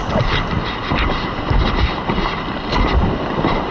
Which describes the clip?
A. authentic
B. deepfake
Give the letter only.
A